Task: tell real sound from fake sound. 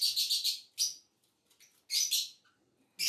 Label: real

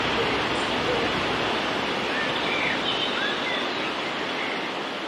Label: real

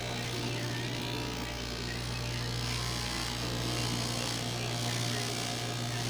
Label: real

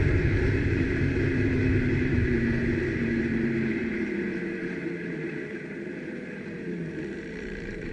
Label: fake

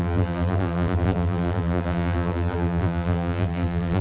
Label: fake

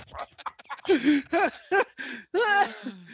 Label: real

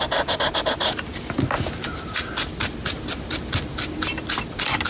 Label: real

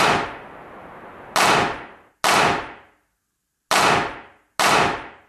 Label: real